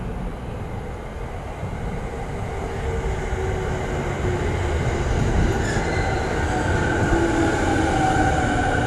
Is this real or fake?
real